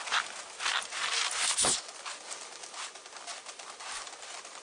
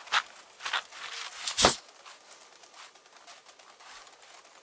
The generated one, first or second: first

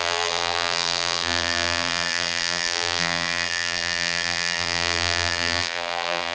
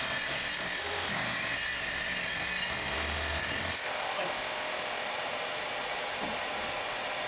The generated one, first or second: first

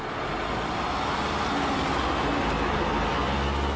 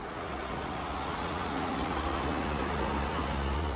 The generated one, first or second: second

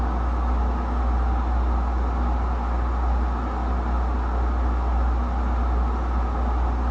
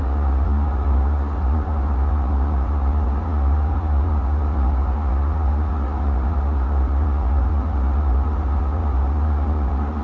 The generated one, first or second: second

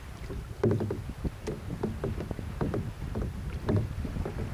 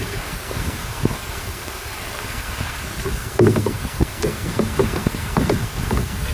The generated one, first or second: second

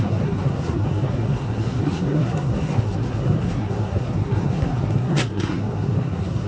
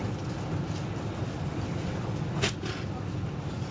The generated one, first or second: first